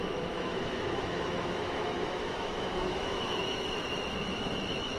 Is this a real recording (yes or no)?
no